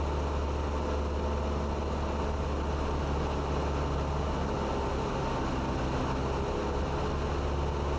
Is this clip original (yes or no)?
yes